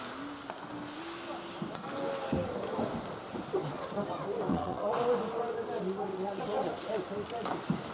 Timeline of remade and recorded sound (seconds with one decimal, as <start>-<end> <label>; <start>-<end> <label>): 0.0-4.5 recorded; 4.5-5.0 remade; 5.0-6.1 recorded; 6.1-6.7 remade; 6.7-7.9 recorded